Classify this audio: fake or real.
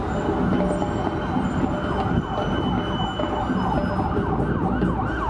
real